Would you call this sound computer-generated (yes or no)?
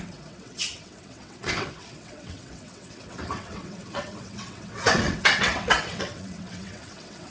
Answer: yes